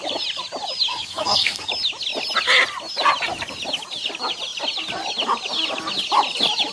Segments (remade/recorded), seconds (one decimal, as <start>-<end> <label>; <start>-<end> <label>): 0.0-0.9 recorded; 0.9-1.7 remade; 1.7-6.7 recorded